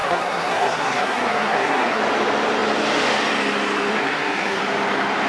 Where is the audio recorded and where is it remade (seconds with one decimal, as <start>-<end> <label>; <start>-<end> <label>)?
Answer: 0.0-2.0 remade; 2.0-3.9 recorded; 3.9-4.6 remade; 4.6-5.3 recorded